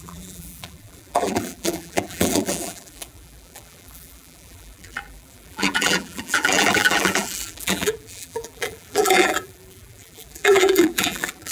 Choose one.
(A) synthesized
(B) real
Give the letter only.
A